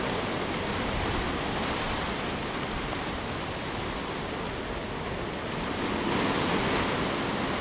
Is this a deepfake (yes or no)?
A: no